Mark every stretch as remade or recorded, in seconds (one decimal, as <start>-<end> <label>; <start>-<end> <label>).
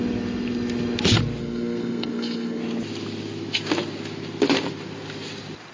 0.0-1.4 recorded; 1.4-2.6 remade; 2.6-5.7 recorded